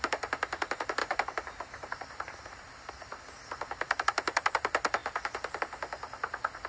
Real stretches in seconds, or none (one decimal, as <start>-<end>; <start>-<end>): 0.0-1.0; 3.2-6.7